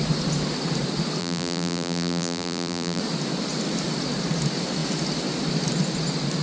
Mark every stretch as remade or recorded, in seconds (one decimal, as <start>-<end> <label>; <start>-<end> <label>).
0.0-1.2 recorded; 1.2-3.0 remade; 3.0-6.4 recorded